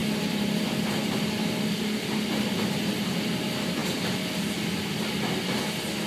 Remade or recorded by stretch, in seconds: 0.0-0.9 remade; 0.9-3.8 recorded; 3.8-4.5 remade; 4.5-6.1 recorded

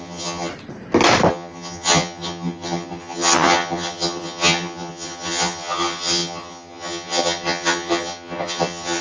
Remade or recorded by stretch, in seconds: 0.0-0.5 remade; 0.5-1.3 recorded; 1.3-9.0 remade

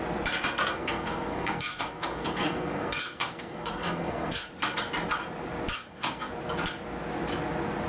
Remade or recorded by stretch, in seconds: 0.0-0.6 recorded; 0.6-4.5 remade; 4.5-5.7 recorded; 5.7-6.3 remade; 6.3-7.9 recorded

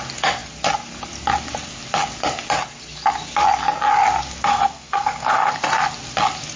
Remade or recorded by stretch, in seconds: 0.0-4.5 recorded; 4.5-5.5 remade; 5.5-6.6 recorded